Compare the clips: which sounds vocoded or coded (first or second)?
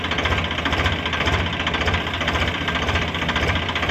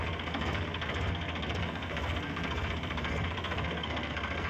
second